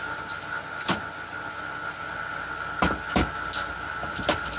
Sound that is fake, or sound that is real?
real